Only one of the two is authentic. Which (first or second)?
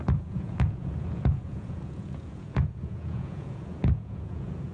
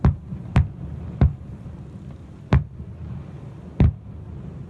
second